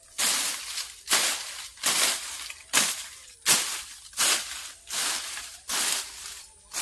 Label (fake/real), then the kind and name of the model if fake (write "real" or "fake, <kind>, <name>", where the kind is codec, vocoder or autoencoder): real